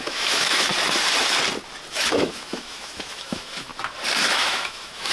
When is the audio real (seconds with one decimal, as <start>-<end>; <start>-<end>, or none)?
0.7-1.9; 3.7-4.2